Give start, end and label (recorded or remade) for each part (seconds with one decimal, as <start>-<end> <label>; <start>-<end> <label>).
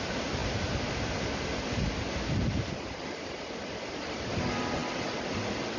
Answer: 0.0-5.8 recorded